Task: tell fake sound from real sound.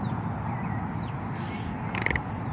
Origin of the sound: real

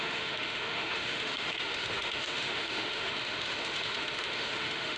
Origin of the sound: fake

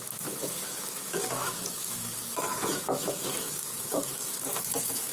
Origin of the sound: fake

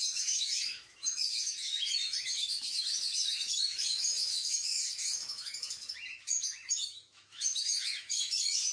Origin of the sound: fake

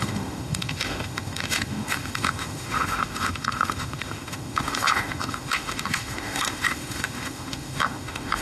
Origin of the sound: fake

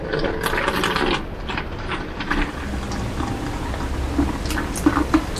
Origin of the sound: real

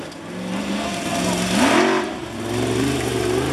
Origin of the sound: real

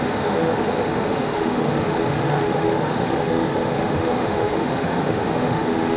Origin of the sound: fake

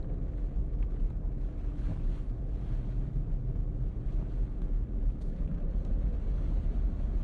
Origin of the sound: real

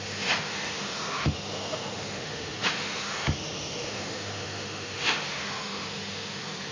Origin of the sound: fake